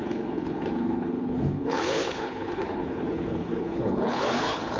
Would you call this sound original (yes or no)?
no